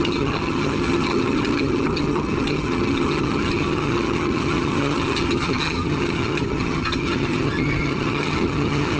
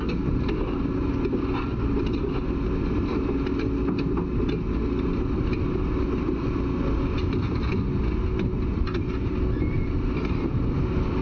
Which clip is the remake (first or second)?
first